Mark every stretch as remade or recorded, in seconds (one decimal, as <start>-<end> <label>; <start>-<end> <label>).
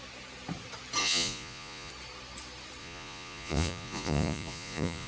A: 0.0-1.0 recorded; 1.0-1.9 remade; 1.9-2.8 recorded; 2.8-5.1 remade